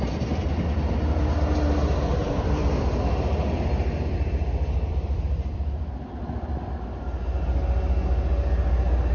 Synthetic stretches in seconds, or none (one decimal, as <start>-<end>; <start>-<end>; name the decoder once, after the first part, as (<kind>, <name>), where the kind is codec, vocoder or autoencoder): 2.2-7.0 (vocoder, BigVGAN v2)